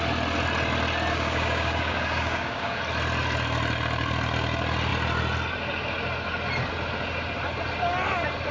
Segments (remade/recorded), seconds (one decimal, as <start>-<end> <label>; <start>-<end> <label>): 0.0-1.1 recorded; 1.1-2.8 remade; 2.8-8.5 recorded